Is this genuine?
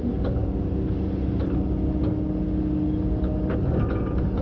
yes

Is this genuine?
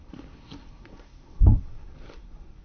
no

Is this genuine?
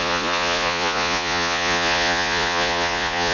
no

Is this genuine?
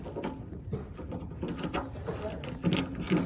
yes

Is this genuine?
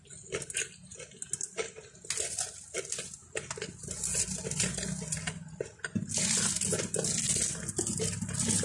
yes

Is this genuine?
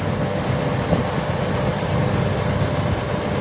yes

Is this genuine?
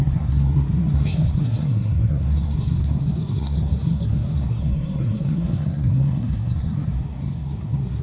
no